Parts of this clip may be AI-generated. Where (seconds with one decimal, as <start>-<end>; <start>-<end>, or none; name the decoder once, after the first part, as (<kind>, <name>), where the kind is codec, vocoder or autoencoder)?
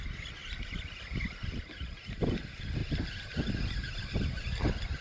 0.4-1.0 (vocoder, BigVGAN v2)